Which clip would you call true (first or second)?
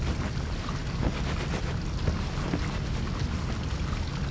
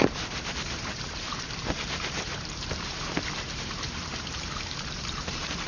first